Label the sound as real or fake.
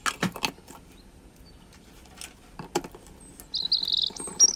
real